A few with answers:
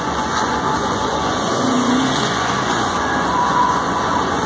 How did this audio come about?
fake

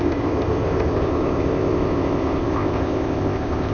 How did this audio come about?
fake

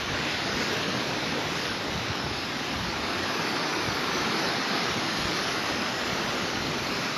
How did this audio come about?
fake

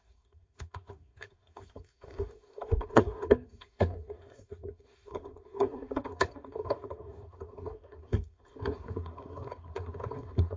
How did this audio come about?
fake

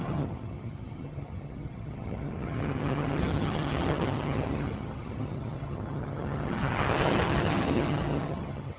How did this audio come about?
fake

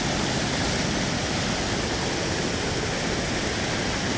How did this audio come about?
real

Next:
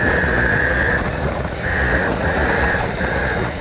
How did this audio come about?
fake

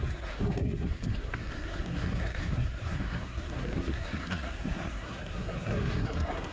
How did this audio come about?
fake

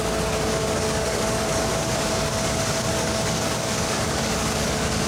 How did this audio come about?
fake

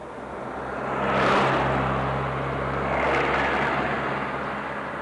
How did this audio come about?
real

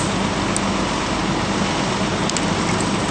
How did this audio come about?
real